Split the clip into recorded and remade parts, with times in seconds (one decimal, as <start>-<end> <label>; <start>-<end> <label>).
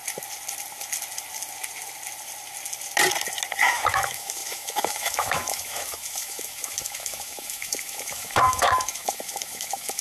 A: 0.0-3.6 recorded; 3.6-10.0 remade